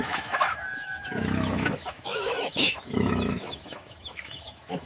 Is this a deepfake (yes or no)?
yes